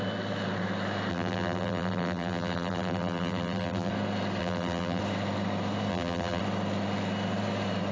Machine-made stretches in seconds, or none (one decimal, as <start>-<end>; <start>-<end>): 1.1-3.9; 4.4-5.0; 5.9-6.4